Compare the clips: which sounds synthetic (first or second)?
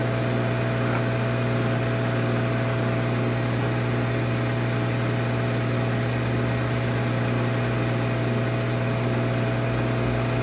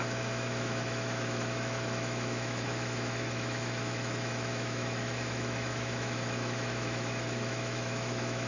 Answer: second